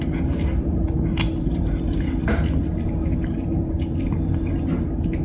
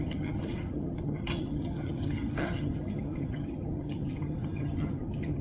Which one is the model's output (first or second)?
second